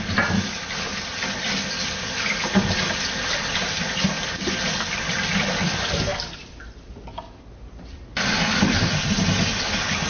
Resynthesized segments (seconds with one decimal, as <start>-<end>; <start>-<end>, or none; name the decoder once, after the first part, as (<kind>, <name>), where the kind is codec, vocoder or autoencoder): none